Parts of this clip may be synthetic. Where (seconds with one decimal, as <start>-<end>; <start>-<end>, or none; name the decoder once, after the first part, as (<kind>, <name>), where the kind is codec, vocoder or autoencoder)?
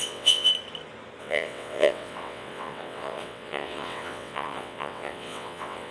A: 0.0-0.5 (vocoder, WaveNeXt); 1.2-5.9